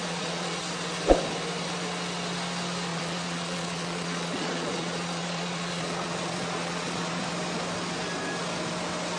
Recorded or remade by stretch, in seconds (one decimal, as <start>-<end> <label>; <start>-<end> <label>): 0.0-0.6 remade; 0.6-2.9 recorded; 2.9-7.3 remade; 7.3-9.2 recorded

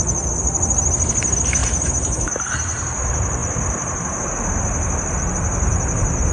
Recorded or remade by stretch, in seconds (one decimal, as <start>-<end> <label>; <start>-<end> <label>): 0.0-1.6 recorded; 1.6-2.3 remade; 2.3-6.3 recorded